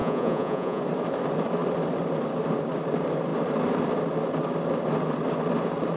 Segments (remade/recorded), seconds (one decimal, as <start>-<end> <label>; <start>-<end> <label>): 0.0-0.8 remade; 0.8-6.0 recorded